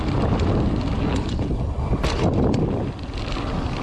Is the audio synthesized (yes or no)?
no